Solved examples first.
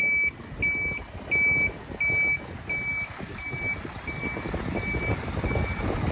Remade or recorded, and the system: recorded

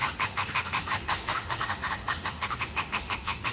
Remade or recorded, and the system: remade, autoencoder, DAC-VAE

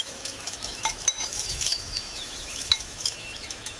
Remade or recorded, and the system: remade, autoencoder, DAC-VAE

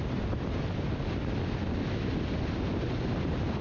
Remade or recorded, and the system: recorded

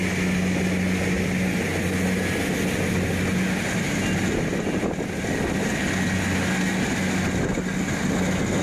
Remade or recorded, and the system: recorded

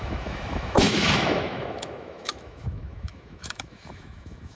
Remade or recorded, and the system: remade, autoencoder, DAC-VAE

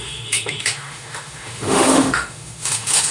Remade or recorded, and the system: remade, autoencoder, DAC-VAE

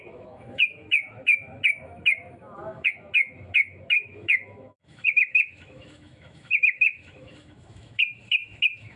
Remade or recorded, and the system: remade, autoencoder, DAC-VAE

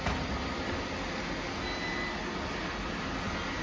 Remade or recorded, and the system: recorded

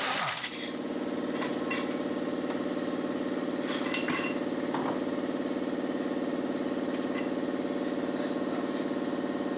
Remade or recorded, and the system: recorded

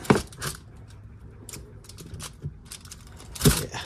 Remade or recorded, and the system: recorded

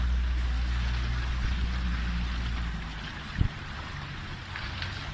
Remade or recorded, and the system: recorded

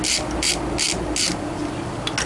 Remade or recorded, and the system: recorded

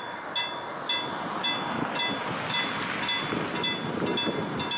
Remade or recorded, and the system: recorded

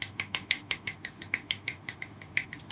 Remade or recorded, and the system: remade, autoencoder, DAC-VAE